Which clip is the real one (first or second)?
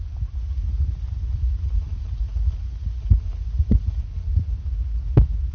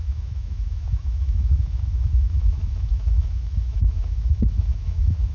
first